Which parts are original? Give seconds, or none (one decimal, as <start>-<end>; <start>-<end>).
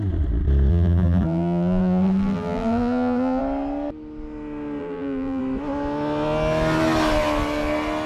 0.0-0.7; 3.4-4.8; 5.4-8.1